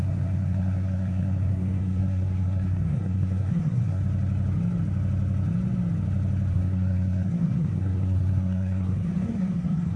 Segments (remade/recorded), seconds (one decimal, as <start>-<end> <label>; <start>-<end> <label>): 0.0-4.0 remade; 4.0-6.5 recorded; 6.5-10.0 remade